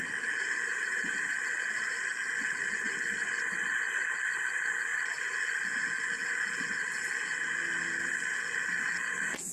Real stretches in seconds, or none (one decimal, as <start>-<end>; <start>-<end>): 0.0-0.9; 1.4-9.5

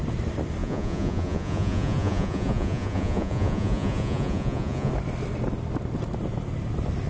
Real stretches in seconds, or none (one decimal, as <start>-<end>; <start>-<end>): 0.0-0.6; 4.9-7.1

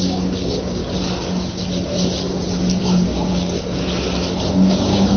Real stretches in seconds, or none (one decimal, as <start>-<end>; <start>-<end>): 0.8-2.8; 3.3-4.5

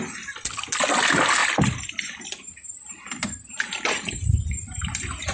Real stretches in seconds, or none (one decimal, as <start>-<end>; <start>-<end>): 0.0-5.3

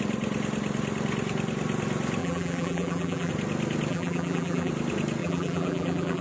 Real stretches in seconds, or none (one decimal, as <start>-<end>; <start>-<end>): 0.0-2.2; 3.3-3.9; 4.7-5.2

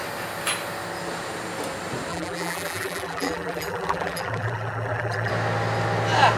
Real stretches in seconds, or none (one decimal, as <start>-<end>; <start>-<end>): 0.0-2.1; 5.3-6.4

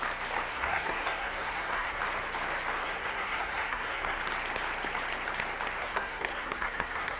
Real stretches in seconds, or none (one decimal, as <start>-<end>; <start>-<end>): 0.0-0.5; 2.0-2.8; 4.2-5.8

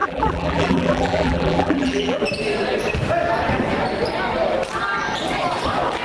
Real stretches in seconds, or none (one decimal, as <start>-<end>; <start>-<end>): 2.2-6.0